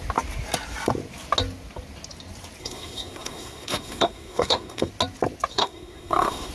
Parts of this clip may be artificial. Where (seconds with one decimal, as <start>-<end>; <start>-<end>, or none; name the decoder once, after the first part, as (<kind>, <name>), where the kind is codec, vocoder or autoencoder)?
2.6-4.9 (codec, SNAC); 5.5-6.5